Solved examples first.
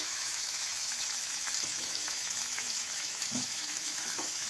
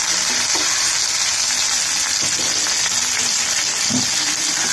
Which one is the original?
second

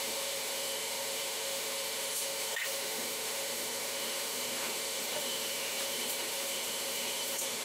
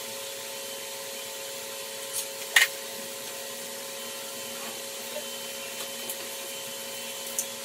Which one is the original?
second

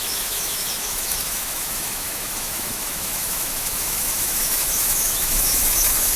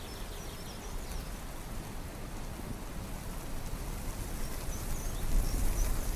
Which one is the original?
second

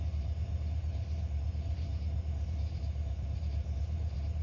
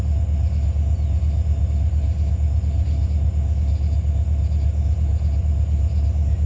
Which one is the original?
second